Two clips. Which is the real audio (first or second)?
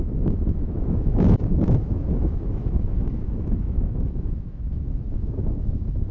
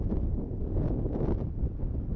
second